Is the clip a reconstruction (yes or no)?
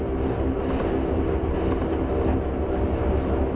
no